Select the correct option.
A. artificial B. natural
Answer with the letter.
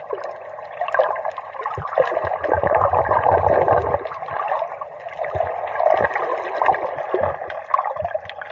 B